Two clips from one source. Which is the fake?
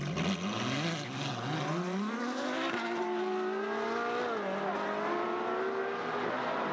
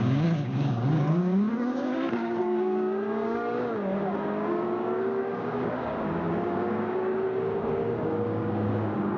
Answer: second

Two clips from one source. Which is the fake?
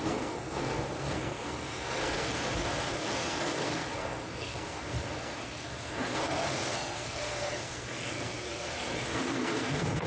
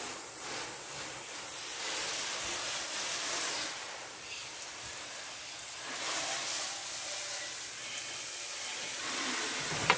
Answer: first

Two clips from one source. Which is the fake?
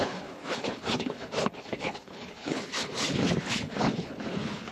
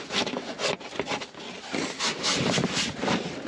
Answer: first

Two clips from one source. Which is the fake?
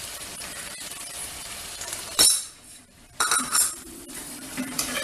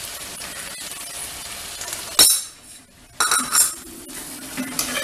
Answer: first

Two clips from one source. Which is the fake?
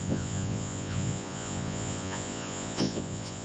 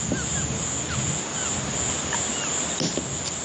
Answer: first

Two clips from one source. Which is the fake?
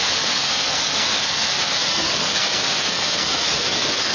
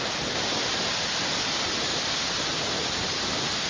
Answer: first